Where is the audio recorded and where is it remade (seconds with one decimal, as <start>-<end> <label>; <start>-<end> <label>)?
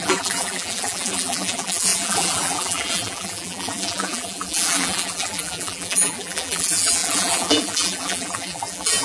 0.0-9.0 remade